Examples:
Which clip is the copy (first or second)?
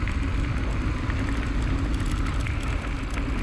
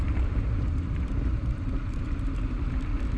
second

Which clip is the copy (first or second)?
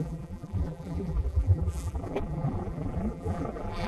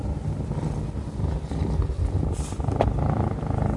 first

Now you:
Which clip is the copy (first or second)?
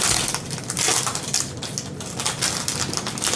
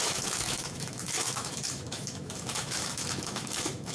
second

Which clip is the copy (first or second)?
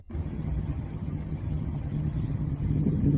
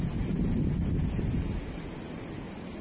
first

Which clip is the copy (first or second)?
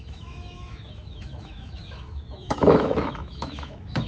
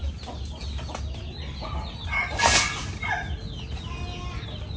first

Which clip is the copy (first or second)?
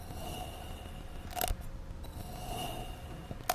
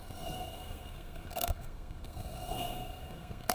second